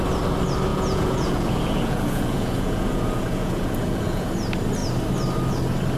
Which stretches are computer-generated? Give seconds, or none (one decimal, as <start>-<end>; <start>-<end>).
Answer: 0.7-4.3